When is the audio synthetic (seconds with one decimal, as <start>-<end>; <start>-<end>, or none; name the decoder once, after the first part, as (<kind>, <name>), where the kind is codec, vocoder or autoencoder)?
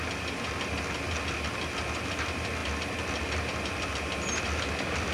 none